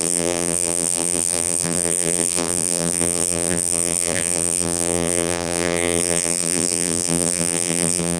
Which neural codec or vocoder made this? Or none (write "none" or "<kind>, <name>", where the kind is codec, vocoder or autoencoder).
vocoder, BigVGAN v2